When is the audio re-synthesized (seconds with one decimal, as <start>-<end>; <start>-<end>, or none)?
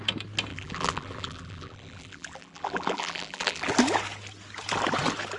0.5-3.7